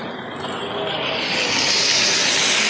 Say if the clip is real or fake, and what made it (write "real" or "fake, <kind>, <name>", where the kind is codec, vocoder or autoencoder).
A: real